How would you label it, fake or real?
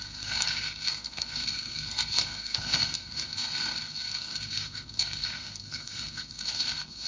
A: fake